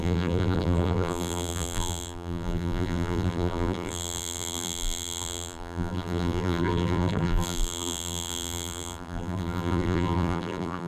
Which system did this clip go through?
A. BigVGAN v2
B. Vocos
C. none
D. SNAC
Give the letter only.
A